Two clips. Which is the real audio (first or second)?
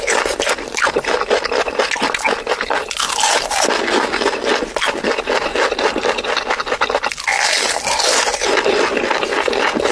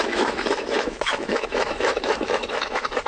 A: first